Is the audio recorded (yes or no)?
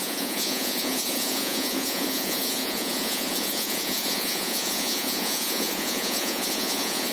no